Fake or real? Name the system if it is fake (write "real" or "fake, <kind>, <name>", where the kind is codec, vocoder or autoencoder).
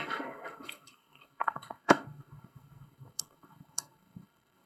fake, codec, SNAC